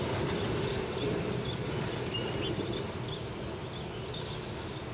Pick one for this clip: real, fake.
real